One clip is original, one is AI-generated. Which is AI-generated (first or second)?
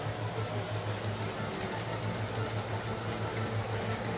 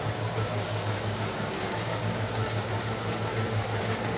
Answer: second